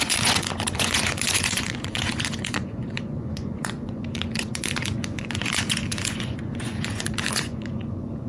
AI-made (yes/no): yes